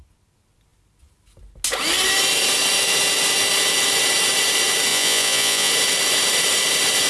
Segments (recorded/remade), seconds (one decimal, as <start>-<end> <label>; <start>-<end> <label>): 0.0-4.9 recorded; 4.9-5.7 remade; 5.7-7.1 recorded